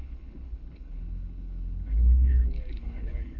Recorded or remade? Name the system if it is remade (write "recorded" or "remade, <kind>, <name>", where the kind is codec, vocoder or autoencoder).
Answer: remade, codec, HILCodec